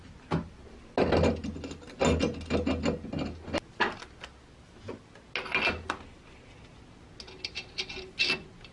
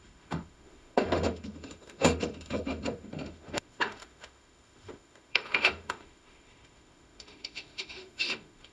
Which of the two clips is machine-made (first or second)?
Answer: second